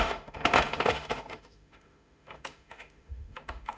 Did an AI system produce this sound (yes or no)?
yes